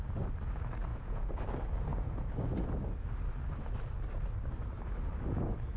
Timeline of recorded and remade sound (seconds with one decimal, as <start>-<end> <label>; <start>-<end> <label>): 0.0-0.9 recorded; 0.9-1.4 remade; 1.4-5.8 recorded